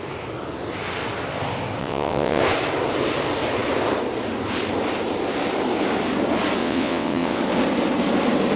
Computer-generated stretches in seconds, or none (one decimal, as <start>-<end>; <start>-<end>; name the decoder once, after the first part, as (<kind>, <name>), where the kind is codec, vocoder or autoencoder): 1.8-2.4 (vocoder, WaveNeXt); 6.6-7.4